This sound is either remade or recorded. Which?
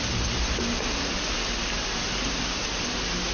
recorded